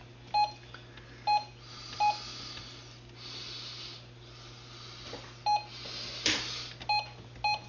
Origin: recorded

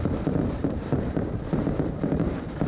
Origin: remade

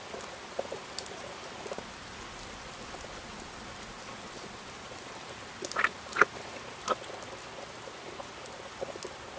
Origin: recorded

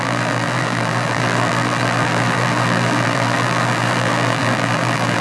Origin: remade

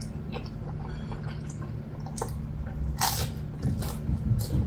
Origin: recorded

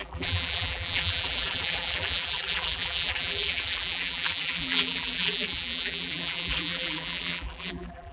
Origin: remade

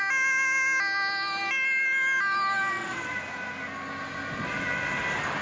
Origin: recorded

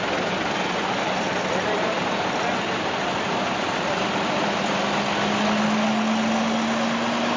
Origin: recorded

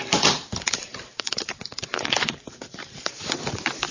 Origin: remade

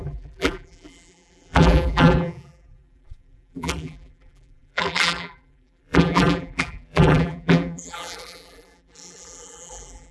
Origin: remade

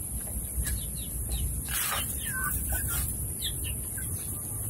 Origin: remade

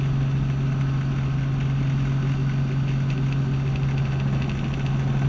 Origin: recorded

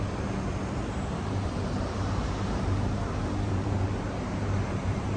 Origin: remade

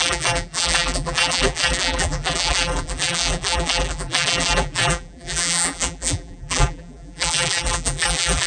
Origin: remade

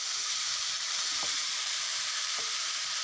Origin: remade